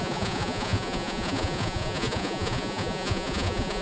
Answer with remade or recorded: remade